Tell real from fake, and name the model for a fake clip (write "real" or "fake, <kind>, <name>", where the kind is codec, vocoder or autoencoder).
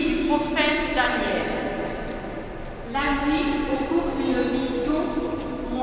real